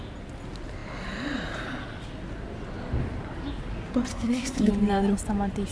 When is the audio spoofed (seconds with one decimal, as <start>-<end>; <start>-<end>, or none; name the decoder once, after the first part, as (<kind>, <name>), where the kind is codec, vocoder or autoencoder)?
4.1-4.7 (codec, SNAC)